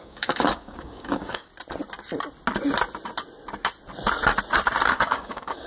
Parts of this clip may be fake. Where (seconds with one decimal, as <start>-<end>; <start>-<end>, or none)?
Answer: 0.0-1.5; 4.9-5.7